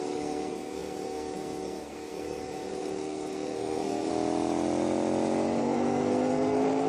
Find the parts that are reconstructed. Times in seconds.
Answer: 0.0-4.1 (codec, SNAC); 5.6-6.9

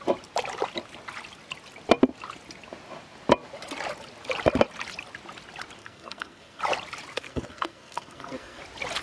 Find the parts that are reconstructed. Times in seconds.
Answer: 5.8-6.6 (codec, SNAC); 7.1-8.6

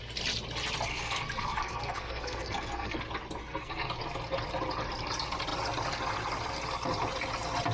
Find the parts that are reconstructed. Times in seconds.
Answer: 0.9-3.0 (codec, SNAC); 3.4-3.9